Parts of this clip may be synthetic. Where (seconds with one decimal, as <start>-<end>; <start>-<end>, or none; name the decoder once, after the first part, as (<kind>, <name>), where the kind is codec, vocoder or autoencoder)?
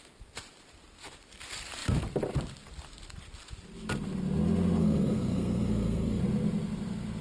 4.8-6.2 (codec, SNAC)